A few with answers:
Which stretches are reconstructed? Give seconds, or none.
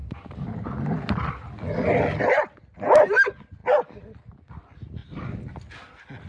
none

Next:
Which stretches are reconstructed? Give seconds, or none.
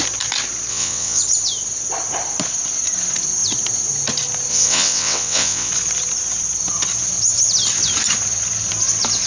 0.7-1.2; 4.5-5.7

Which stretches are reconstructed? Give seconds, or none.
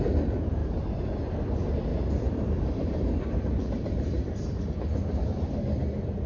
1.9-4.6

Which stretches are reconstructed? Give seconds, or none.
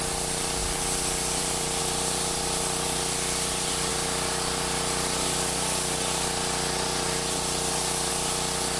none